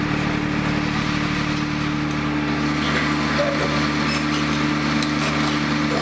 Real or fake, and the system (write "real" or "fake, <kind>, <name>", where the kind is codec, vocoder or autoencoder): real